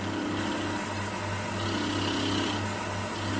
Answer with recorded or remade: recorded